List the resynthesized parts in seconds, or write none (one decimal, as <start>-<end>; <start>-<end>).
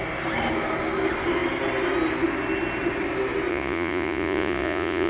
3.5-5.1